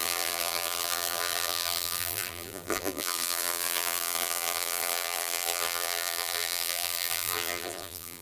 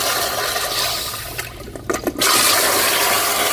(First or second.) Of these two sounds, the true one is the second